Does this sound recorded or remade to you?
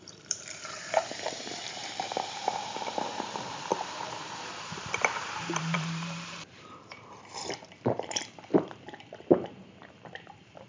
remade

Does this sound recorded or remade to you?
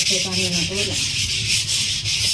recorded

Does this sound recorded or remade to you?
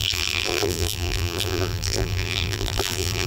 remade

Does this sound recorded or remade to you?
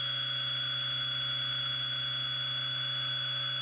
recorded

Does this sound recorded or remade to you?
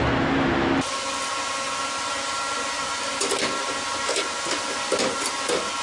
recorded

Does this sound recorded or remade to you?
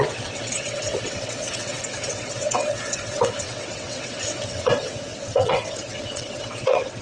remade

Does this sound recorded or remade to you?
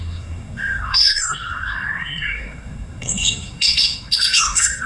remade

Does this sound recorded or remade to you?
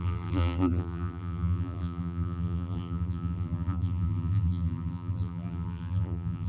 remade